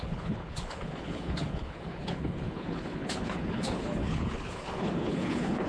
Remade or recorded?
remade